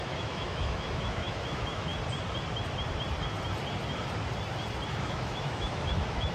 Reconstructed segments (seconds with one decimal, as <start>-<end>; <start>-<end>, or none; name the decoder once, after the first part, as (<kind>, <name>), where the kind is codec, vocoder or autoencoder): 0.0-1.9 (autoencoder, DAC-VAE); 4.9-6.3